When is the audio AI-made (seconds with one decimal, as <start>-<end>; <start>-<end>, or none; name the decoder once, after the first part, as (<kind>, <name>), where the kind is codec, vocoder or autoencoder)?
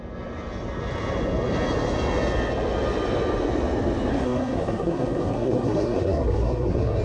4.1-7.0 (codec, SNAC)